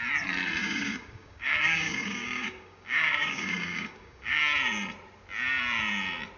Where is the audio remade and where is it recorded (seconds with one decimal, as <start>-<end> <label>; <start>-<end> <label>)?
0.0-0.6 recorded; 0.6-4.4 remade; 4.4-6.4 recorded